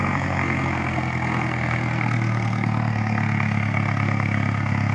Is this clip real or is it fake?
fake